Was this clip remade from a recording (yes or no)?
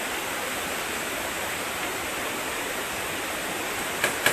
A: no